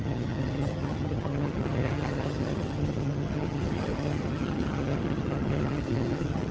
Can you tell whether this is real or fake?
fake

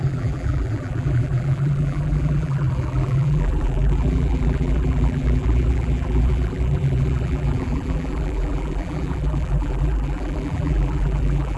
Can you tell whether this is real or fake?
fake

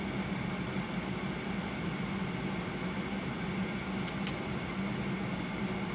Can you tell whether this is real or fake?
real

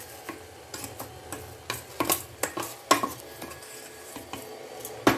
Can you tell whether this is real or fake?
real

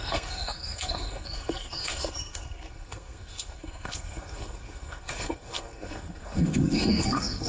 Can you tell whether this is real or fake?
fake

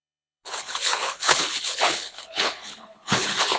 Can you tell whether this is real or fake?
fake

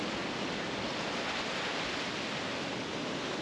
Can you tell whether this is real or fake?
real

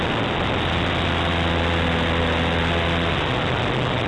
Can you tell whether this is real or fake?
real